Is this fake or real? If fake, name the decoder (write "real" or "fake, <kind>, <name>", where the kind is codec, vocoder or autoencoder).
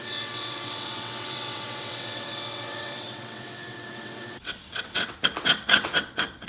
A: fake, vocoder, WaveNeXt